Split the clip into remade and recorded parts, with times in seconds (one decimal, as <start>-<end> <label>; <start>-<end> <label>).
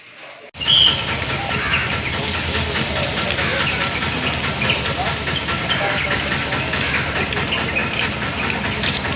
0.0-9.2 recorded